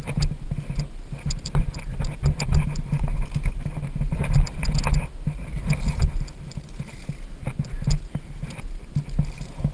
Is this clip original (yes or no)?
yes